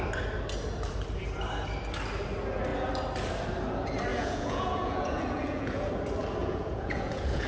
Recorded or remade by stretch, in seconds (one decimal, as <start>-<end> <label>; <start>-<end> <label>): 0.0-4.1 recorded; 4.1-5.9 remade; 5.9-6.4 recorded; 6.4-7.5 remade